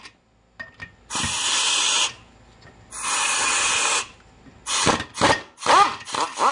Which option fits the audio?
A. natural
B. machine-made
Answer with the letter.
A